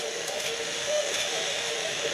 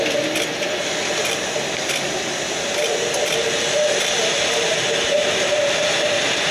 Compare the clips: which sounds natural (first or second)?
second